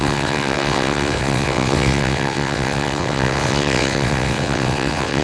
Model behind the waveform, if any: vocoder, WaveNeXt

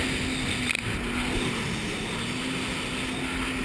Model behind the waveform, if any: none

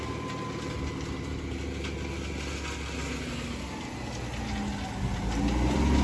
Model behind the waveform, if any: none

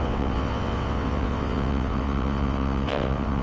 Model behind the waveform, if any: vocoder, WaveNeXt